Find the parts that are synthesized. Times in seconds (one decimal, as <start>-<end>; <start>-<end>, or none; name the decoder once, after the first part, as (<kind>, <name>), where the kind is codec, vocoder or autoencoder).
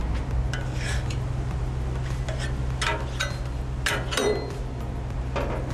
none